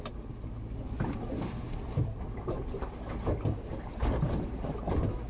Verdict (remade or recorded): recorded